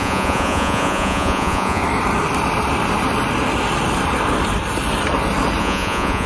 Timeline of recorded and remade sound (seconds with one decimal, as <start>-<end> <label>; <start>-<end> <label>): 0.0-1.8 remade; 1.8-5.6 recorded; 5.6-6.3 remade